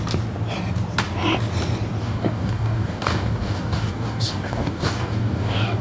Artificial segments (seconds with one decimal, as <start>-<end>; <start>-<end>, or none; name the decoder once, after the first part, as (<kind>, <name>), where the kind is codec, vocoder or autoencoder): 2.0-5.8 (codec, DAC)